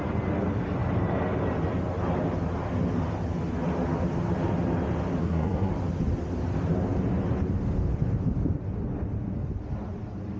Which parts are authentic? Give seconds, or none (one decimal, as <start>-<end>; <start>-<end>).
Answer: 0.0-5.2; 5.7-10.4

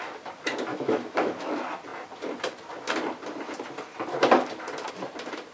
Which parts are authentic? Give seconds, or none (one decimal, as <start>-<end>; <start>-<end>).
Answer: 0.0-0.7; 1.5-5.5

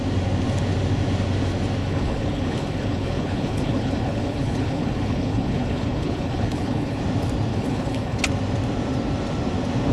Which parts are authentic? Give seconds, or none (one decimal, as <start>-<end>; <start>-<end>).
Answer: 0.0-1.8; 7.0-7.5; 8.2-9.9